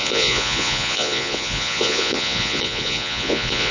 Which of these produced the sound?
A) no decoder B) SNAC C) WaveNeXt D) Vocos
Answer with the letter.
D